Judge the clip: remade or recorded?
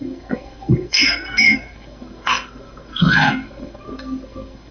remade